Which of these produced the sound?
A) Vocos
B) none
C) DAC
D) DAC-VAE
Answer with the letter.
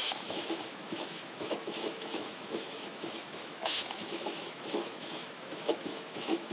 D